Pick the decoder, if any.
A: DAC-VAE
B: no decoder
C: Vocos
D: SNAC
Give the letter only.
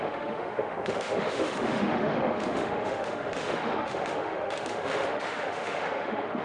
A